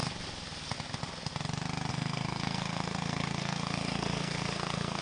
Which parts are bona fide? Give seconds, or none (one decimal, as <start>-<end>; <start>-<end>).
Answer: 0.0-1.9